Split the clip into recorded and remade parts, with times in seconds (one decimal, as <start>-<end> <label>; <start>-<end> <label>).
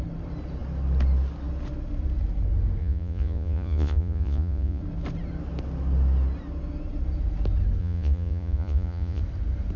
0.0-2.8 recorded; 2.8-4.8 remade; 4.8-7.8 recorded; 7.8-9.2 remade; 9.2-9.8 recorded